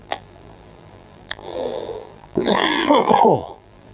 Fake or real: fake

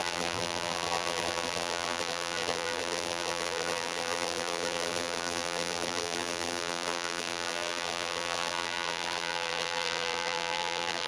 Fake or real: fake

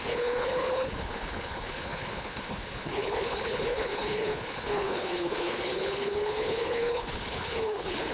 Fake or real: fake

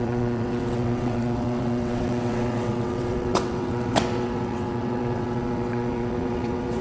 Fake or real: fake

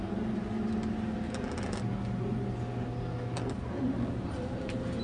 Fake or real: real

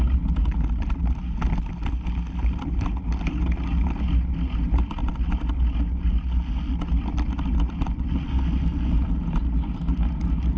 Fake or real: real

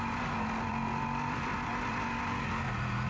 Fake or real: real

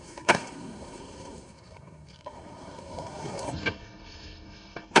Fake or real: fake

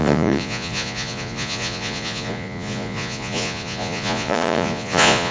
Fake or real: fake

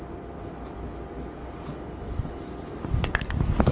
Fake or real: real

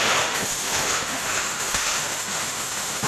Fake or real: fake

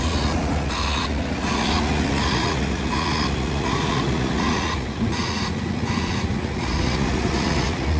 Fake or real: fake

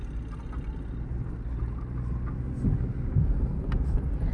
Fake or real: real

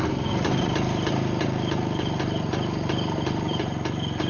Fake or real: real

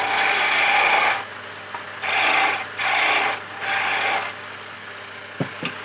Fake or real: real